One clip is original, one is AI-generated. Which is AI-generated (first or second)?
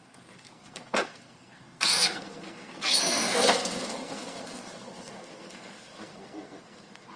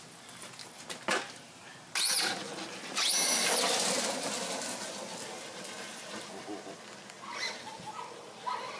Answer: first